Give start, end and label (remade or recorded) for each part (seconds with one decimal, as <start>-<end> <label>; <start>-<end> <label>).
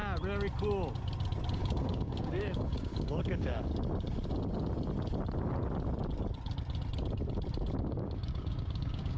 0.0-1.5 recorded; 1.5-3.7 remade; 3.7-7.8 recorded; 7.8-9.2 remade